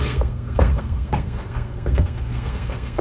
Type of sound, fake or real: fake